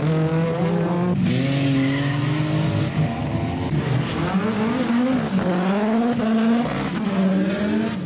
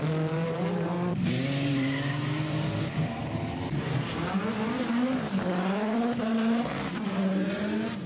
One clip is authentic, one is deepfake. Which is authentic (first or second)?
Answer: first